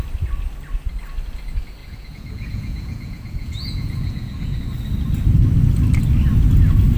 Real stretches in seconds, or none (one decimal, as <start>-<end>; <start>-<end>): 0.0-1.8; 4.6-7.0